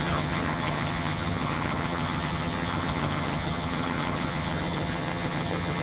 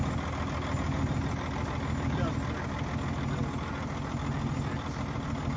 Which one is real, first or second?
second